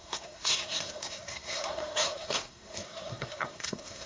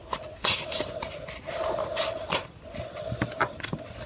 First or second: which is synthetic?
first